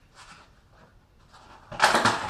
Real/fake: real